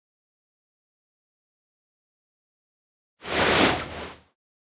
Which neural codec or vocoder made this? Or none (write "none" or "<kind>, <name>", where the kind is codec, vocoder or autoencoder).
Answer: none